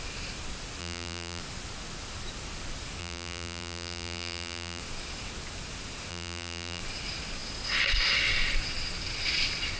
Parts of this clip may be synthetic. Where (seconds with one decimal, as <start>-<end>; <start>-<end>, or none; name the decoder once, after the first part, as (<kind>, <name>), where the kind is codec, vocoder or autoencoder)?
0.8-1.4 (vocoder, BigVGAN v2); 3.0-4.8; 6.1-6.8